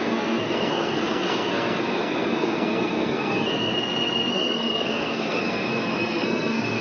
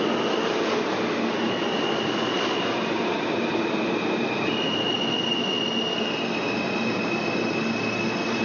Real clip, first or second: second